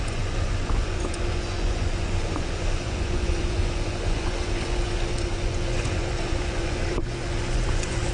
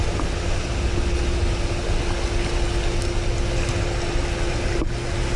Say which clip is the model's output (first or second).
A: first